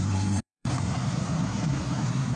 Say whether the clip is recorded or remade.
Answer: remade